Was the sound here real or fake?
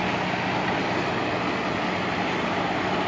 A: real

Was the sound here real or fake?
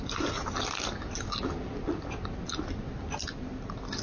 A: real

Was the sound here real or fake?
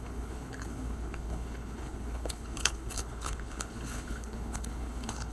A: fake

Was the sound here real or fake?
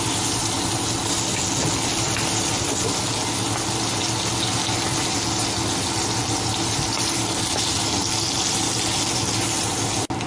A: real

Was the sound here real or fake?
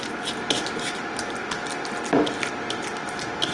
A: real